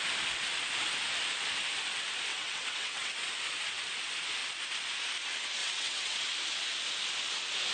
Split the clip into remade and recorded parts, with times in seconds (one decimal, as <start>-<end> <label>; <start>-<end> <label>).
0.0-2.3 recorded; 2.3-3.1 remade; 3.1-5.6 recorded; 5.6-6.2 remade; 6.2-7.7 recorded